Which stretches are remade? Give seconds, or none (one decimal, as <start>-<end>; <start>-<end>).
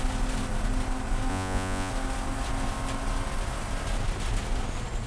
1.3-1.9